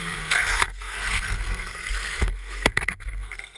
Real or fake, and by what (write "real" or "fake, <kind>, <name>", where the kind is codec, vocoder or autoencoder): fake, codec, SNAC